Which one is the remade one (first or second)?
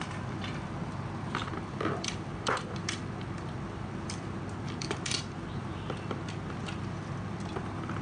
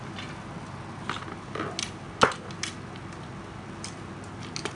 first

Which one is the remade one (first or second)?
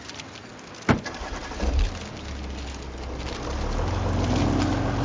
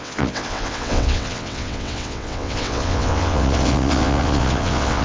second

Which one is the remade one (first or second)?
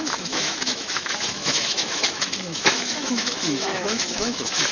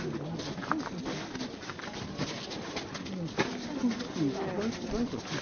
first